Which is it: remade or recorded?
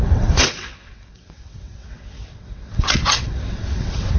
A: remade